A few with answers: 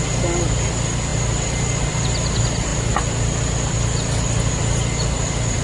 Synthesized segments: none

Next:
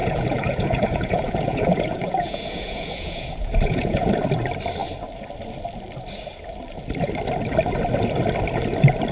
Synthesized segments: 0.0-4.1 (vocoder, Vocos)

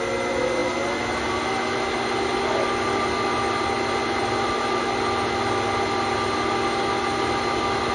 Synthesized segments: none

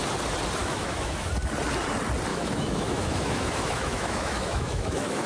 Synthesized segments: 0.6-1.3 (autoencoder, DAC-VAE); 2.3-5.3

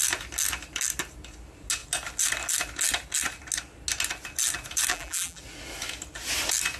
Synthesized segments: 4.9-5.4 (vocoder, BigVGAN v2)

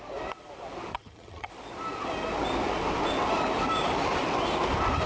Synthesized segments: 0.9-1.5 (vocoder, HiFi-GAN)